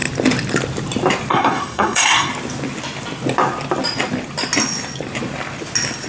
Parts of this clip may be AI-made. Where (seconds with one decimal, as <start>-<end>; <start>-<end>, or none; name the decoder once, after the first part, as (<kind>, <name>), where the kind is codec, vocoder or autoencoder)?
1.3-2.3 (codec, SNAC)